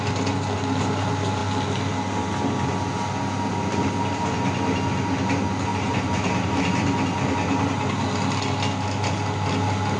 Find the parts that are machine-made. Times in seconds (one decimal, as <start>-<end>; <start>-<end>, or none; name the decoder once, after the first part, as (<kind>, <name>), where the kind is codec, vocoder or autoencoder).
none